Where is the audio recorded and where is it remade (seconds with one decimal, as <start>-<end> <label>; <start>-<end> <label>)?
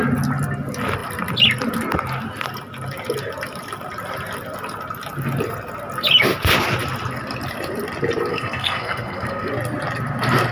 0.0-8.3 recorded; 8.3-9.5 remade; 9.5-10.5 recorded